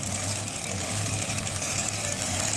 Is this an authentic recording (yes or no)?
no